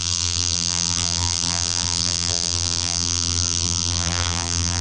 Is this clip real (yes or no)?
no